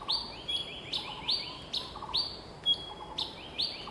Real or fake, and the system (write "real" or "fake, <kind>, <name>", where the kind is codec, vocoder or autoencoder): real